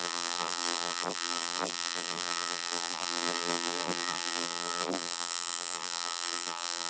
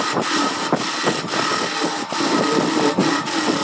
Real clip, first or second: second